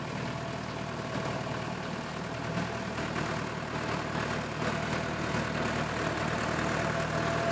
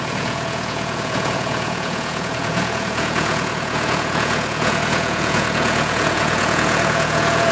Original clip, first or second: first